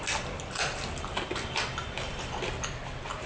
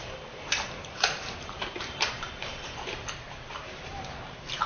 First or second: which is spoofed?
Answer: second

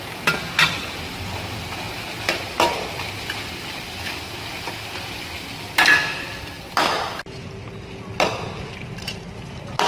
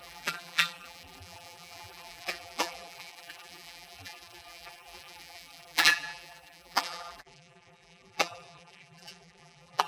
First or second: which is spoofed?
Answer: second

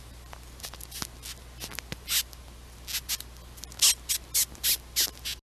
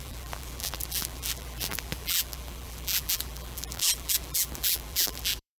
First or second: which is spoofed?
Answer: second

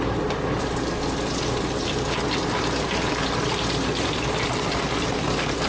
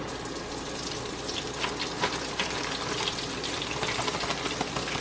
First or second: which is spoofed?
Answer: first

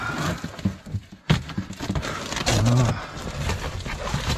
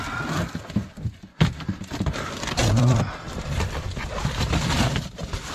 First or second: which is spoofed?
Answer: second